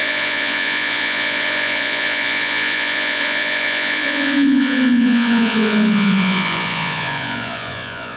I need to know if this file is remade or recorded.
remade